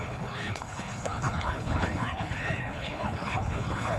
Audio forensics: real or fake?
fake